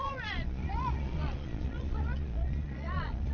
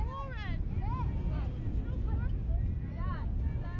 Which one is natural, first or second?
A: second